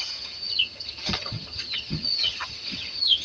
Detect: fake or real fake